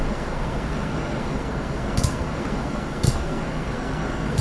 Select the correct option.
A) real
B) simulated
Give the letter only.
B